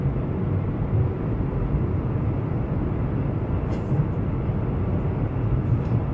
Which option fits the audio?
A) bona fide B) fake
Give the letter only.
A